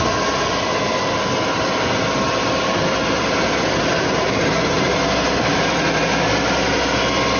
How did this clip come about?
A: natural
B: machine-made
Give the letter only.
A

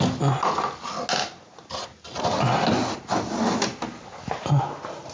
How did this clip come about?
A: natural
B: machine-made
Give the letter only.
A